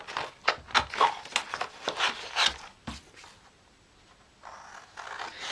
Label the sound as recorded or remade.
recorded